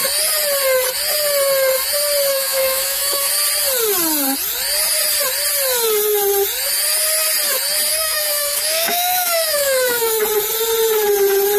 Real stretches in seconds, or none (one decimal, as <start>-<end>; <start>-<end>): 0.0-2.3; 3.3-7.9; 10.2-11.6